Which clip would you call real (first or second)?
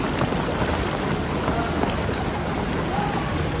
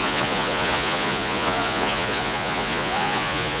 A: first